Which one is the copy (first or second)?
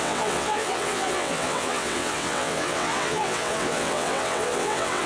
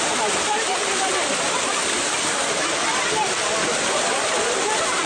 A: first